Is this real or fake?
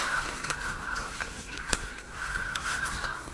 fake